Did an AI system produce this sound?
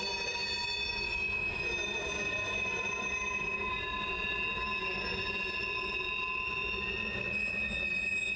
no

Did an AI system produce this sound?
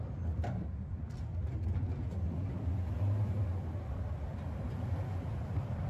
no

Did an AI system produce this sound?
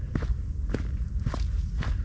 no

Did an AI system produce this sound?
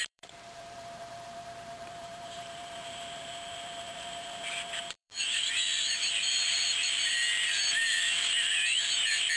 yes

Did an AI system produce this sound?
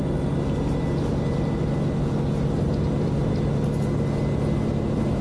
no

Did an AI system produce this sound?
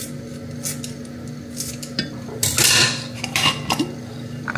no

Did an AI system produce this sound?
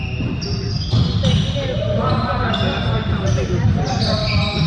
no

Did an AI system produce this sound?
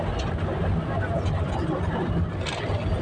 no